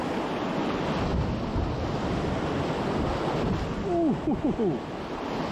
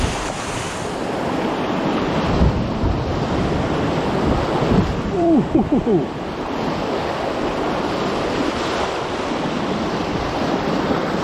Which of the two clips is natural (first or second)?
first